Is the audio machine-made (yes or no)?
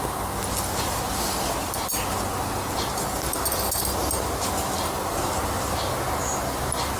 no